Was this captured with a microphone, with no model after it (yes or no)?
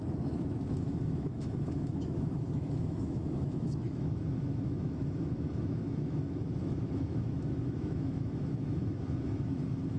no